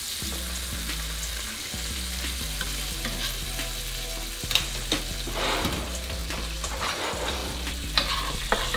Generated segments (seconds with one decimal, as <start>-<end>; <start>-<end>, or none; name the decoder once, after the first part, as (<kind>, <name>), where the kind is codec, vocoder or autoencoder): 6.2-6.8 (vocoder, BigVGAN v2); 7.4-8.4